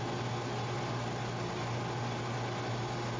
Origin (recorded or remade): recorded